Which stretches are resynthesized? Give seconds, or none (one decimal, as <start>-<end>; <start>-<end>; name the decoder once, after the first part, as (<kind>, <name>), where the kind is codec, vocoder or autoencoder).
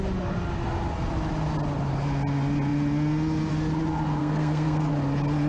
4.2-4.9 (codec, SNAC)